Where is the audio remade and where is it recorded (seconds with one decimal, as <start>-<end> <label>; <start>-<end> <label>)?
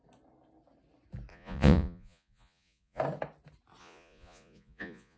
0.0-1.3 recorded; 1.3-3.0 remade; 3.0-3.8 recorded; 3.8-5.2 remade